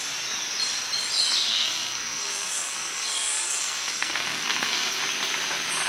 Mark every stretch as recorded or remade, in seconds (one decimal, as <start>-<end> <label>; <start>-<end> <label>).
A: 0.0-1.5 recorded; 1.5-5.0 remade; 5.0-5.9 recorded